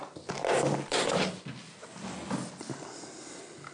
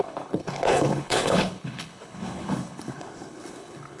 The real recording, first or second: first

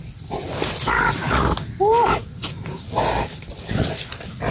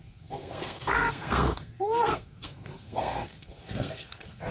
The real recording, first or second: first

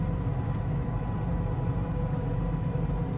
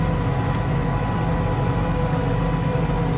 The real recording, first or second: second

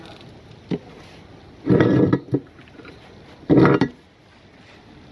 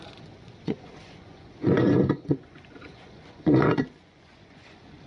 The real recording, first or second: first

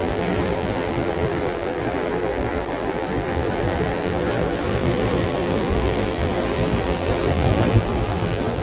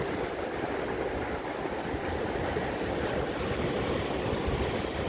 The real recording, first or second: second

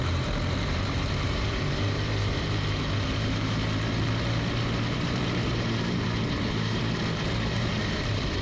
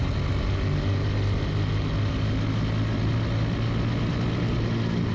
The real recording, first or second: second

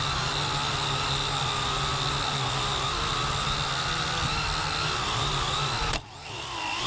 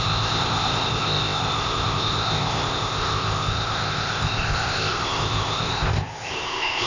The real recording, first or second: first